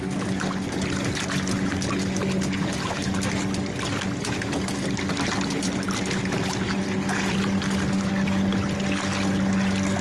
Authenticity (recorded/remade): recorded